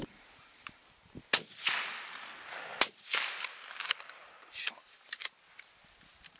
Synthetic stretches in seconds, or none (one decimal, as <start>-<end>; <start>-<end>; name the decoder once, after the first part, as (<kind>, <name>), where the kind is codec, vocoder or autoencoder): 0.0-0.8 (vocoder, BigVGAN v2); 1.9-2.3; 3.7-6.4

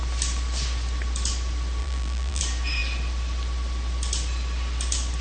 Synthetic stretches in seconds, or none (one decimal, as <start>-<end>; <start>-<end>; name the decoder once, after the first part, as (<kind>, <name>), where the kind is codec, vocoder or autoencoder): 1.8-2.4 (vocoder, BigVGAN v2)

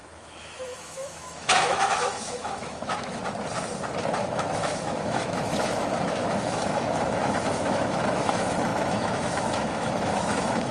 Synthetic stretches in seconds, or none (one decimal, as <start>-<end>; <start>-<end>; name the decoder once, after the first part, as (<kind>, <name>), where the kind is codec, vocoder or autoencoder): 0.0-3.2 (autoencoder, DAC-VAE); 4.2-10.7